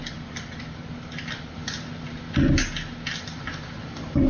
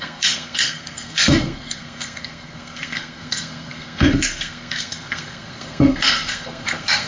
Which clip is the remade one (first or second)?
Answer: second